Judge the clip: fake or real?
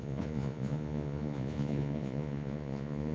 fake